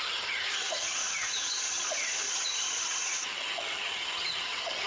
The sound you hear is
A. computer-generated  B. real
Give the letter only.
A